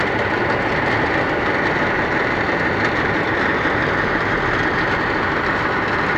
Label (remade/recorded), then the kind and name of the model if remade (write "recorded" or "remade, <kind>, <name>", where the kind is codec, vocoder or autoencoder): recorded